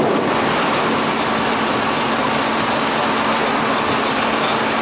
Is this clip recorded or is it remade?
recorded